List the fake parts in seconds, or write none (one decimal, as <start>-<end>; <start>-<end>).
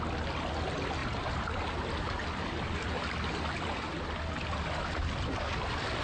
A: 1.0-1.8; 2.2-3.4